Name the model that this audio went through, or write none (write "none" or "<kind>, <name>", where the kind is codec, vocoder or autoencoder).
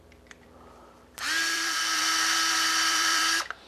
vocoder, BigVGAN v2